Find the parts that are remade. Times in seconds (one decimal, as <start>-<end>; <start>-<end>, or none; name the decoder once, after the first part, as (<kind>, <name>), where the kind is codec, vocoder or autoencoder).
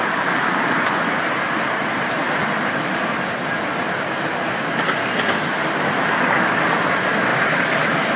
0.7-1.2 (vocoder, Vocos)